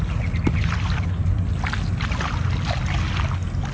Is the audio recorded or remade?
recorded